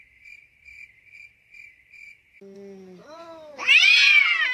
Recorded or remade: recorded